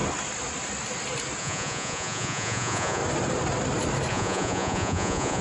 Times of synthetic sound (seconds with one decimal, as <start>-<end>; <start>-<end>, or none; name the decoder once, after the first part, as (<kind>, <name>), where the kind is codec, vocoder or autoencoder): 1.4-3.0 (vocoder, Vocos); 4.1-5.4